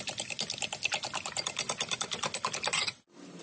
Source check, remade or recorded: recorded